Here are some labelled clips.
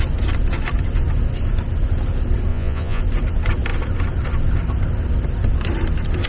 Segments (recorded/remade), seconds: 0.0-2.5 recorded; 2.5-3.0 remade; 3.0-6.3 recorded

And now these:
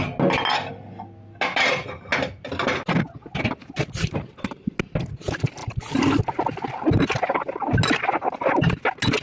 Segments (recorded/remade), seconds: 0.0-9.2 recorded

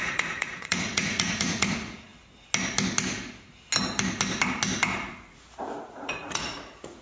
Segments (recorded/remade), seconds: 0.0-2.1 remade; 2.1-5.1 recorded; 5.1-7.0 remade

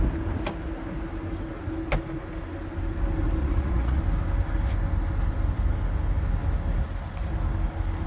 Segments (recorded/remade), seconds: 0.0-3.4 recorded; 3.4-4.0 remade; 4.0-8.1 recorded

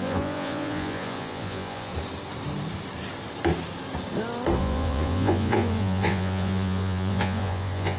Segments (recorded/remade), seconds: 0.0-1.9 remade; 1.9-4.6 recorded; 4.6-8.0 remade